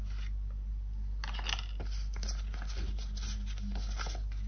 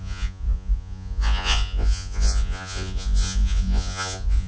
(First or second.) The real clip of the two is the first